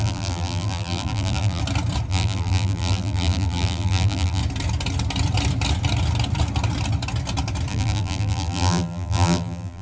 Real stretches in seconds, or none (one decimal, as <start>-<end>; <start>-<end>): 1.6-2.1; 4.4-7.7